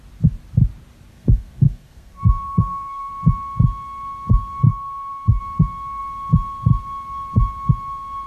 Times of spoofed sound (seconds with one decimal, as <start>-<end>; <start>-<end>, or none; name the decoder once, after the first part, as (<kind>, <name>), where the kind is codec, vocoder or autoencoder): 1.1-3.1 (codec, SNAC); 4.7-5.4